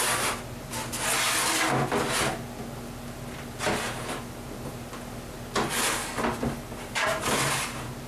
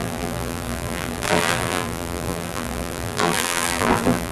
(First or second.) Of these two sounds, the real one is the first